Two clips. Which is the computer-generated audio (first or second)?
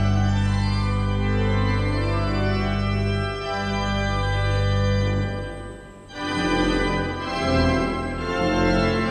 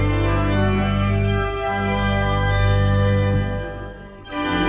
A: second